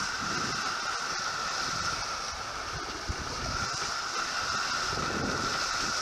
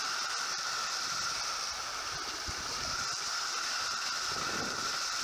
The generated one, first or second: second